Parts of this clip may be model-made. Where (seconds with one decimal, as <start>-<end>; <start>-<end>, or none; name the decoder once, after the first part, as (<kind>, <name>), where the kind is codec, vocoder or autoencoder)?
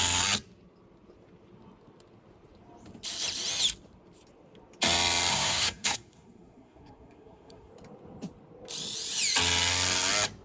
5.3-7.7 (codec, SNAC)